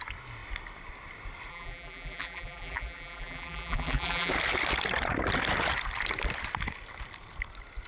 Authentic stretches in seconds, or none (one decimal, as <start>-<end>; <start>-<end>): 0.0-1.5; 4.3-7.9